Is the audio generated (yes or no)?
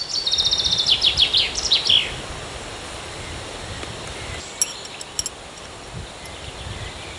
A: no